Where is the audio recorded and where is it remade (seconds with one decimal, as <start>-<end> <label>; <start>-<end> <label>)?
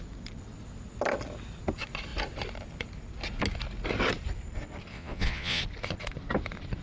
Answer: 0.0-4.9 recorded; 4.9-5.6 remade; 5.6-6.8 recorded